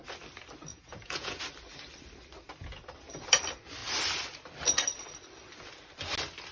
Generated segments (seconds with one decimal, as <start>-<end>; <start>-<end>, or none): 0.7-1.4